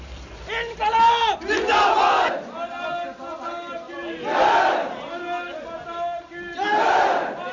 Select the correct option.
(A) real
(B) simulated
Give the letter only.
A